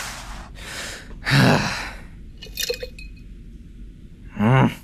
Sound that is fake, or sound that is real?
real